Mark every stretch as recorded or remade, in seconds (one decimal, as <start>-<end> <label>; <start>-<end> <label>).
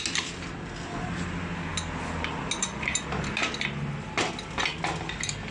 0.0-5.5 recorded